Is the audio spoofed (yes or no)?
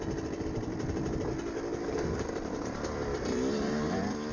yes